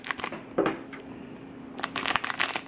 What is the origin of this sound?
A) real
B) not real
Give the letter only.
A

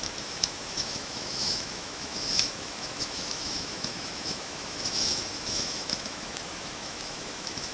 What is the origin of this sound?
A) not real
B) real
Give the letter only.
A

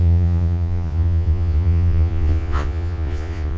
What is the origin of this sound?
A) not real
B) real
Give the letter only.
A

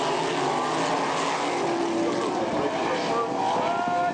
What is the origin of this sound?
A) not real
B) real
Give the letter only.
B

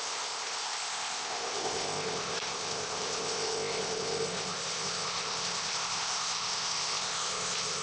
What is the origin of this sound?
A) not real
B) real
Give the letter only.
A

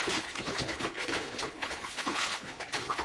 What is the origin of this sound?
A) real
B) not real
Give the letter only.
B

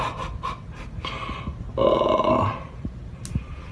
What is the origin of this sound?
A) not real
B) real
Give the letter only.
B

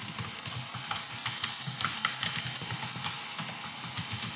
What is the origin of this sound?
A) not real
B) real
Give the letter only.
B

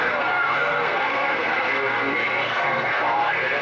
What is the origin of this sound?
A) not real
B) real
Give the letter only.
A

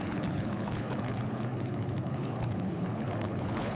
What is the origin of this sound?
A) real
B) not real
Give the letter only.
B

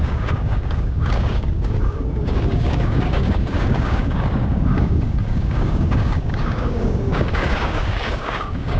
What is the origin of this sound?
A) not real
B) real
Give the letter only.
A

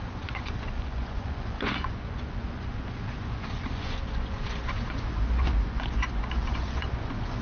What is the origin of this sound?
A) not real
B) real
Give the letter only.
A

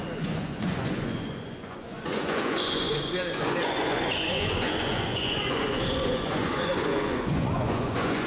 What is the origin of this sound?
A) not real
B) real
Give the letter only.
A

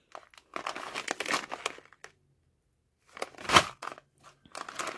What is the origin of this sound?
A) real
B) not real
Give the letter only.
A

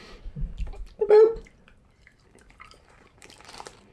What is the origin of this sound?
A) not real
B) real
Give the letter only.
A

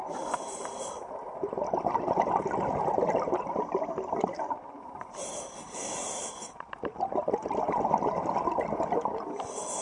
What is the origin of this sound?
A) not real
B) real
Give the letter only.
B